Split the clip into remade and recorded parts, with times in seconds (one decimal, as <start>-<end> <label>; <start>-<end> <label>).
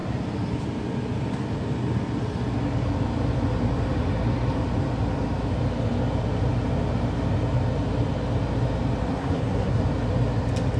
0.0-9.1 recorded; 9.1-9.8 remade; 9.8-10.8 recorded